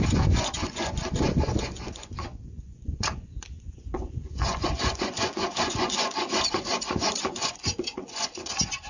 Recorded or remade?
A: remade